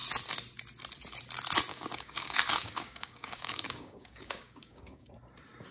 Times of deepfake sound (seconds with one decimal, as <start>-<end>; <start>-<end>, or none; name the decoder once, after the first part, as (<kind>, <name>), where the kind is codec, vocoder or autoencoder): 1.7-5.1 (codec, DAC)